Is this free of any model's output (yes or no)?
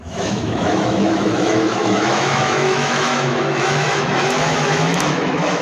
no